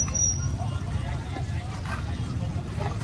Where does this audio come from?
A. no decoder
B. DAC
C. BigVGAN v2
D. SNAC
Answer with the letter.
A